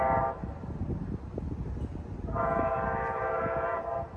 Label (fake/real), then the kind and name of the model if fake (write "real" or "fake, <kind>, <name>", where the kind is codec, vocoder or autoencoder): real